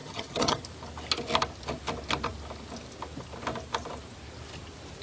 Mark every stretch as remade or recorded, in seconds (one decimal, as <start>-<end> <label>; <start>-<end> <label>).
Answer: 0.0-0.6 remade; 0.6-5.0 recorded